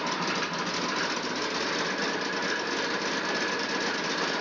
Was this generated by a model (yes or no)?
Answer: no